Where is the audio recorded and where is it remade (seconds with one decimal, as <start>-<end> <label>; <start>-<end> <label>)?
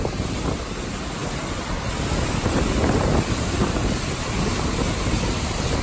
0.0-5.8 recorded